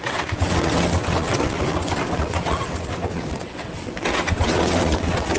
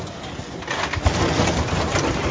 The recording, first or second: second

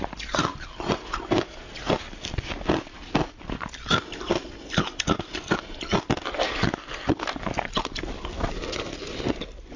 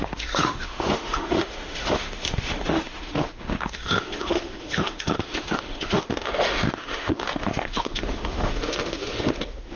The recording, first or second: first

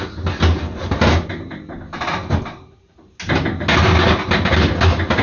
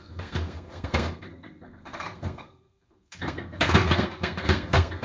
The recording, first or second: first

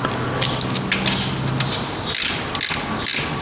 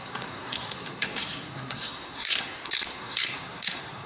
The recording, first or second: first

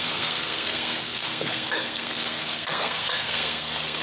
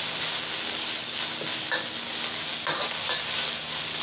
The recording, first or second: second